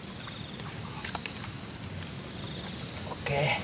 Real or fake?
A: real